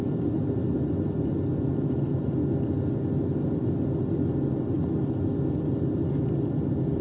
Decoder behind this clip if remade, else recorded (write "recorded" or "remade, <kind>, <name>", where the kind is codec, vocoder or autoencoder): recorded